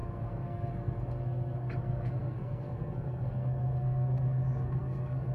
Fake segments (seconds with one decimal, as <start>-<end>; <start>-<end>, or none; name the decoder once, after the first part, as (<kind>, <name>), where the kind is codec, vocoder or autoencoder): 0.0-5.3 (codec, SNAC)